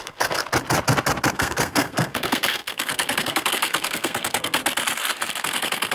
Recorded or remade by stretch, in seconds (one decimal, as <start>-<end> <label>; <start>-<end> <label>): 0.0-0.4 remade; 0.4-1.3 recorded; 1.3-4.6 remade; 4.6-5.4 recorded; 5.4-5.9 remade